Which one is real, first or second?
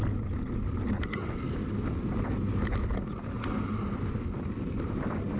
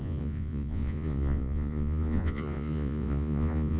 first